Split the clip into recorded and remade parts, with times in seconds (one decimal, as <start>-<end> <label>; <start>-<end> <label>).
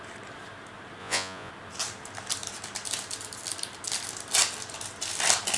0.0-1.0 recorded; 1.0-1.5 remade; 1.5-5.6 recorded